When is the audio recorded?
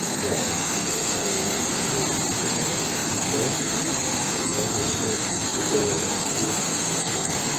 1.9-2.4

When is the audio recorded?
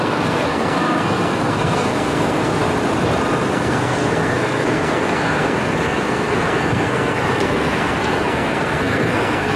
2.6-3.5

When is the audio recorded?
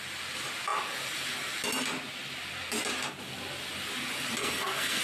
0.0-4.4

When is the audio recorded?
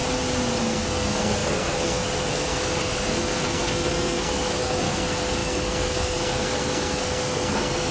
0.0-0.6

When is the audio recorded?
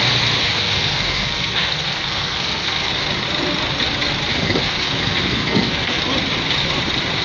0.0-0.4; 2.9-4.3; 6.0-7.2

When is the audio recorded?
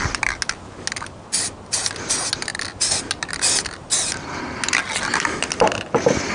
0.0-6.3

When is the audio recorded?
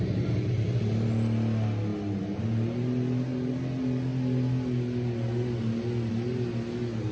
0.0-7.1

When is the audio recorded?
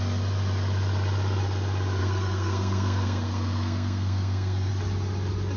0.0-2.0; 4.7-5.6